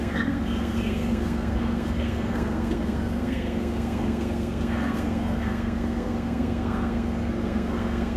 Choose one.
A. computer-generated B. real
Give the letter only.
A